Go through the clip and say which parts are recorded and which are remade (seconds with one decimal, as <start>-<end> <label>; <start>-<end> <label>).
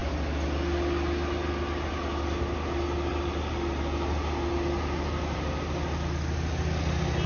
0.0-7.3 recorded